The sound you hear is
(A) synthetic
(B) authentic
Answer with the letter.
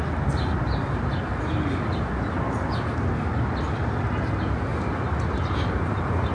B